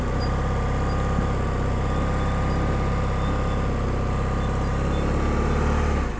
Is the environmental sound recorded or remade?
recorded